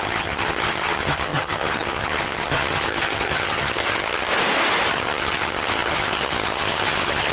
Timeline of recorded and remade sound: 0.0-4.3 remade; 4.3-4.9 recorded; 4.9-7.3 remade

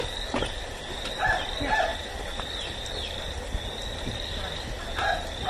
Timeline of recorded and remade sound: 0.0-1.9 recorded; 1.9-2.5 remade; 2.5-5.5 recorded

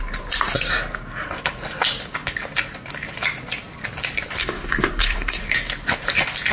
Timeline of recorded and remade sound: 0.0-4.4 recorded; 4.4-5.4 remade; 5.4-6.5 recorded

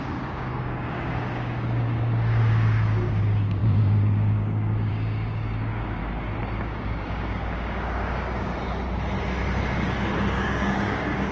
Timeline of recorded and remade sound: 0.0-6.0 remade; 6.0-6.6 recorded; 6.6-8.5 remade; 8.5-9.6 recorded; 9.6-11.3 remade

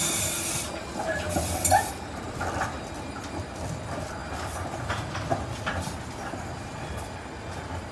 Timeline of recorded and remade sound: 0.0-4.2 remade; 4.2-5.8 recorded; 5.8-7.9 remade

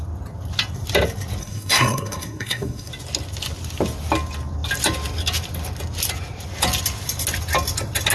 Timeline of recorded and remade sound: 0.0-1.4 recorded; 1.4-2.9 remade; 2.9-8.1 recorded

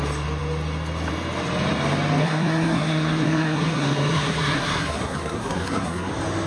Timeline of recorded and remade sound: 0.0-2.2 recorded; 2.2-6.1 remade; 6.1-6.5 recorded

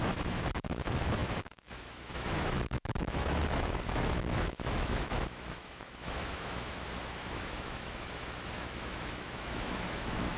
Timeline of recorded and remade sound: 0.0-10.4 remade